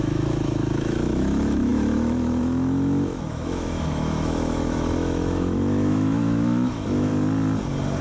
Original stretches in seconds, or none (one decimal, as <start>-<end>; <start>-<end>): 7.1-8.0